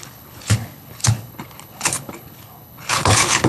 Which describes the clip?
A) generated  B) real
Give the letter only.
A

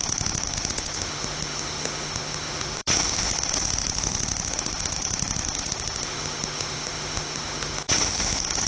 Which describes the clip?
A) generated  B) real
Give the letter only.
A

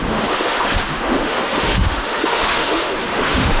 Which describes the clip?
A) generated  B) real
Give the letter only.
A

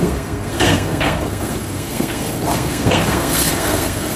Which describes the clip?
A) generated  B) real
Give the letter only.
A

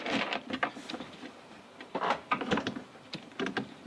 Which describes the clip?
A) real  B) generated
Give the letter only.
B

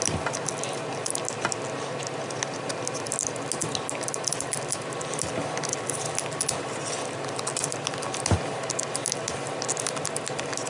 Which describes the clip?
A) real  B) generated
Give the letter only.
A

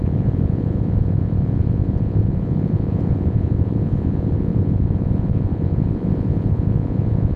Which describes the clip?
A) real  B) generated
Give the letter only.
B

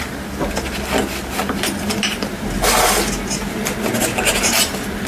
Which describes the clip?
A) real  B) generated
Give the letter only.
A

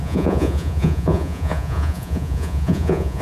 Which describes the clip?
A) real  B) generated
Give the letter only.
B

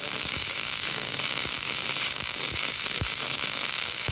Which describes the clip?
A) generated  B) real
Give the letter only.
A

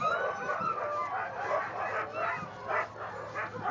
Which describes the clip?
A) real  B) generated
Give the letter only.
A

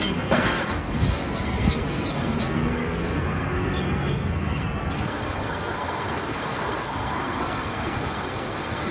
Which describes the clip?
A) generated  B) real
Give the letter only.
A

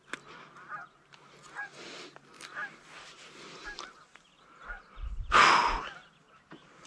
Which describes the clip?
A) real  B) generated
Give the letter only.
A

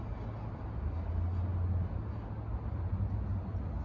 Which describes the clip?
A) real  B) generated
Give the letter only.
A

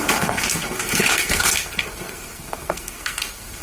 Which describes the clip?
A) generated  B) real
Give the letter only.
A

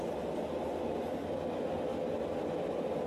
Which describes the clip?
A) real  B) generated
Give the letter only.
A